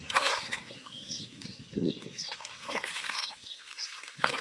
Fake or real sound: fake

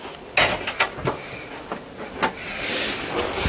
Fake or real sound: real